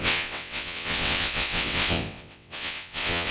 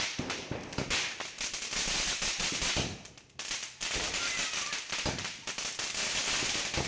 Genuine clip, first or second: second